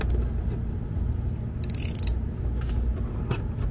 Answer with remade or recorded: recorded